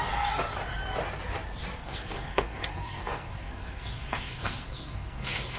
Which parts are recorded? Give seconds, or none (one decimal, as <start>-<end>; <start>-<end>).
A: 0.0-1.8